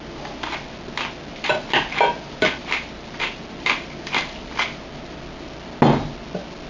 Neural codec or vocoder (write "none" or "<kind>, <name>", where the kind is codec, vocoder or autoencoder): none